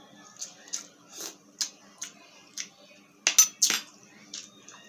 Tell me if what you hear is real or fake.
real